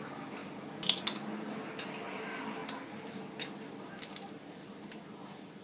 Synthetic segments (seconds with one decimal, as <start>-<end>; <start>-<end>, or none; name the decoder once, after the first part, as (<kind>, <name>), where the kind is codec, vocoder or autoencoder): none